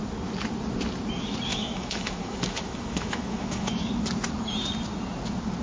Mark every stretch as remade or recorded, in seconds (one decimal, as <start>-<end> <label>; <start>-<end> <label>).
0.0-1.5 recorded; 1.5-3.7 remade; 3.7-5.6 recorded